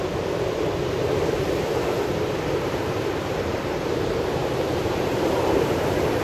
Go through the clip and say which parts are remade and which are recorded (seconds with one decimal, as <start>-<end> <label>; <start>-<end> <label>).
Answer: 0.0-1.7 remade; 1.7-2.4 recorded; 2.4-6.2 remade